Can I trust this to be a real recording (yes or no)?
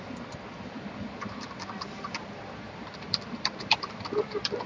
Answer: no